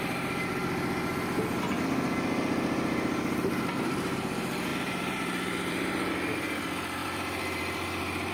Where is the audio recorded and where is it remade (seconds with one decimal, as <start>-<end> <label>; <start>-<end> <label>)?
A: 0.0-4.7 recorded; 4.7-6.1 remade; 6.1-7.0 recorded; 7.0-8.3 remade